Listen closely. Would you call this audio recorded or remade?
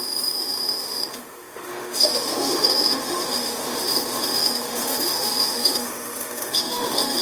remade